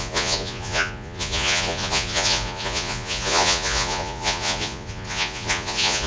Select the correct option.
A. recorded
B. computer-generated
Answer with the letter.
B